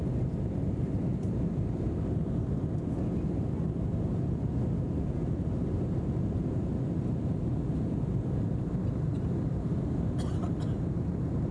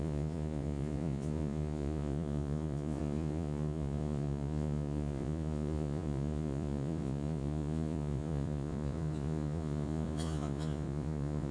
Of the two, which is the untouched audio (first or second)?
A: first